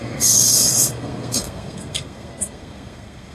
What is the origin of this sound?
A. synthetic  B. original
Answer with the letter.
A